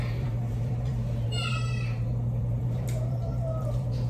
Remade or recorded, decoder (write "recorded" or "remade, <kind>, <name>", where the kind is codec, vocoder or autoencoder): remade, vocoder, BigVGAN v2